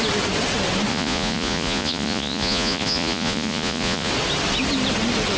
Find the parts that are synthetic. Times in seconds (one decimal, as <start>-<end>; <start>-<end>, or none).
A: 0.9-4.1